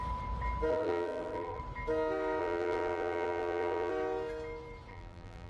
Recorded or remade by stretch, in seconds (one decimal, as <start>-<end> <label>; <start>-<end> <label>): 0.0-0.7 recorded; 0.7-1.6 remade; 1.6-2.4 recorded; 2.4-3.9 remade; 3.9-4.9 recorded; 4.9-5.5 remade